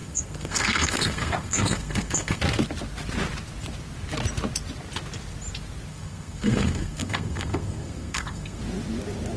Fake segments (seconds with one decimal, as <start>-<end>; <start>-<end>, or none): 0.0-2.4; 5.9-8.6